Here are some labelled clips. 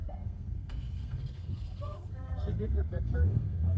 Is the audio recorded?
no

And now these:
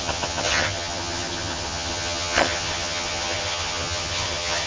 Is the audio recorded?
no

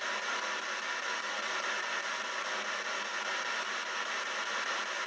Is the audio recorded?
yes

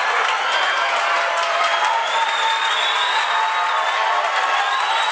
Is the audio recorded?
yes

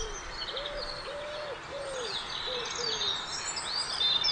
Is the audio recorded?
yes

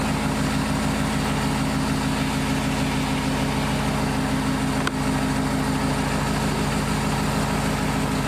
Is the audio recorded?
yes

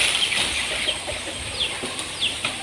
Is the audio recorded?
no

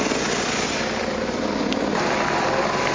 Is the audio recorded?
yes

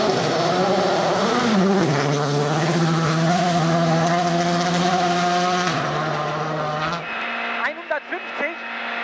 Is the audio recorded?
yes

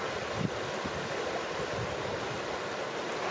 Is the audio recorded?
yes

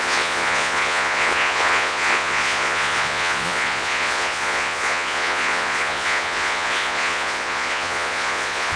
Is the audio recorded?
no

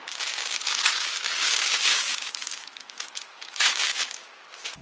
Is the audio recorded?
no